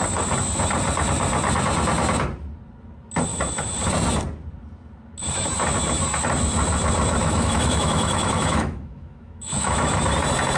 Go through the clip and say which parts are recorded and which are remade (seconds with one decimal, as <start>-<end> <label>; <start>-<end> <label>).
0.0-7.2 recorded; 7.2-10.0 remade; 10.0-10.6 recorded